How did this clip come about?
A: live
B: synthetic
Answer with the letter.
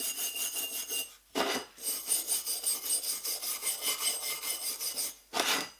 A